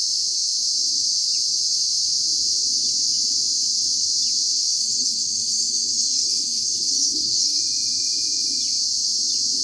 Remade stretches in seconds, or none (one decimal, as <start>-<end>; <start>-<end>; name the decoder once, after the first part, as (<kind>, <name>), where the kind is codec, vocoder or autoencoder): 4.8-7.6 (codec, SNAC)